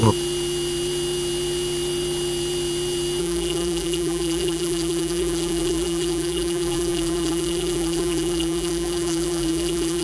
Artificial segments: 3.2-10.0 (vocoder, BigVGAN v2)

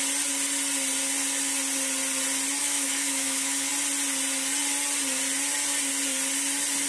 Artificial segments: 2.6-3.7 (autoencoder, DAC-VAE)

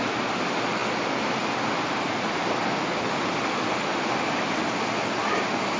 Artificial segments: none

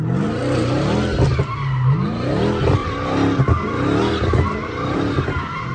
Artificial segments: none

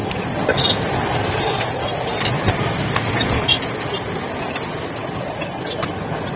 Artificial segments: none